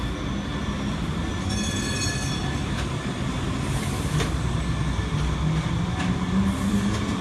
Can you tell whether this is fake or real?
real